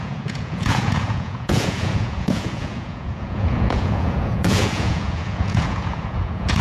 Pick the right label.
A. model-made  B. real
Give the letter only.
A